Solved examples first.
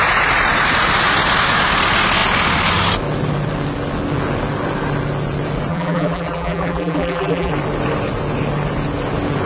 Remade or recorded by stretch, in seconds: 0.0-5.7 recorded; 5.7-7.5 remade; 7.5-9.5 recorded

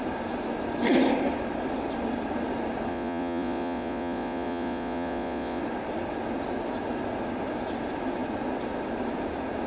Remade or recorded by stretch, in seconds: 0.0-2.9 recorded; 2.9-5.6 remade; 5.6-9.7 recorded